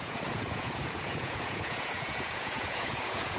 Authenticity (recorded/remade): remade